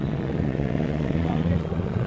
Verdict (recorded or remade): remade